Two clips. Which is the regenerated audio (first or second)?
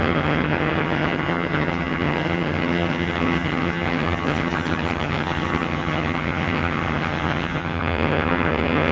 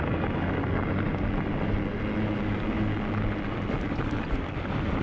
first